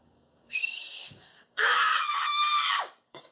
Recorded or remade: remade